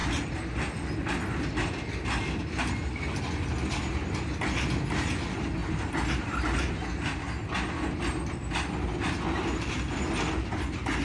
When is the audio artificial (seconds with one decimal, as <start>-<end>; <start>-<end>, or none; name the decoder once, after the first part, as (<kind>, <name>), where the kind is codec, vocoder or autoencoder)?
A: none